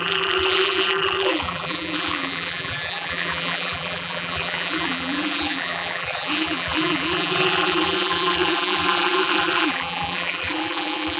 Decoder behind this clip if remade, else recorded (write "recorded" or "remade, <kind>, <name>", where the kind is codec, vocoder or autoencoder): remade, vocoder, BigVGAN v2